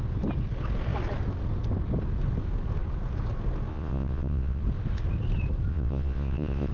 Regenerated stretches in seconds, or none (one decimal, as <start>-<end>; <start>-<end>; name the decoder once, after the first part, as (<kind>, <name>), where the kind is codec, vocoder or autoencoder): 3.7-4.6 (vocoder, Vocos); 5.7-6.7